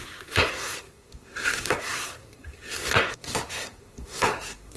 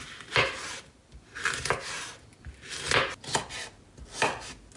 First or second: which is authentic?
second